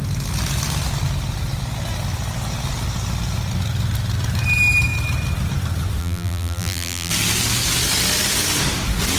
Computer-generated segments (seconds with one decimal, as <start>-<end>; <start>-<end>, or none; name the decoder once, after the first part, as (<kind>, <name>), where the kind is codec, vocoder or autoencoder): 6.0-7.1 (vocoder, BigVGAN v2)